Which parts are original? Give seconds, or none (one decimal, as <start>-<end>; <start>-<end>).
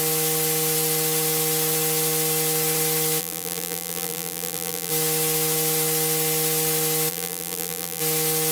0.0-3.2; 4.9-7.1; 8.0-8.5